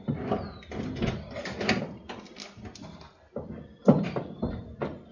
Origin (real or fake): real